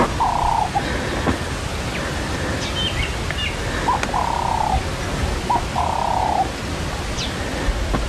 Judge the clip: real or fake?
real